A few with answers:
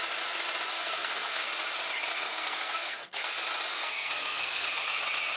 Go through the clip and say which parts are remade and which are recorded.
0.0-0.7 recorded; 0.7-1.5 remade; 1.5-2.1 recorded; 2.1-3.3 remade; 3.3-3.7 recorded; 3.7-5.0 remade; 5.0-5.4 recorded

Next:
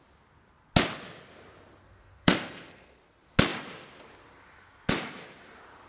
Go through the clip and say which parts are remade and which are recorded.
0.0-1.8 recorded; 1.8-3.0 remade; 3.0-5.9 recorded

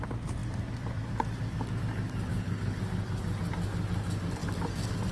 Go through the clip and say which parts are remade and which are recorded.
0.0-2.3 recorded; 2.3-2.8 remade; 2.8-5.1 recorded

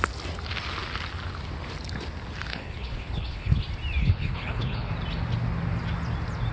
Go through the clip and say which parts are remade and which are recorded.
0.0-2.5 recorded; 2.5-3.6 remade; 3.6-4.0 recorded; 4.0-4.9 remade; 4.9-6.5 recorded